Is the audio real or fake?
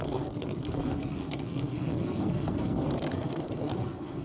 fake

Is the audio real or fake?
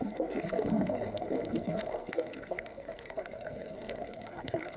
fake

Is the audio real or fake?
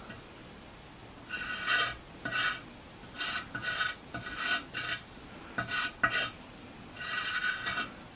real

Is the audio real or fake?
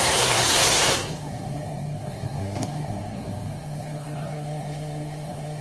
fake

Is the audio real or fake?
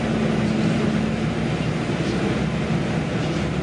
real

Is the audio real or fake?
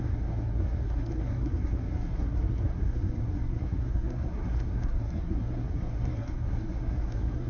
fake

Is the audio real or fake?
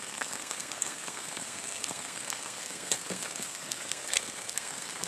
fake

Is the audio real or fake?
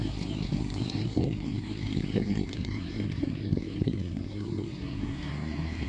fake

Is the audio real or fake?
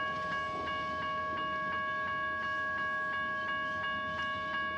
real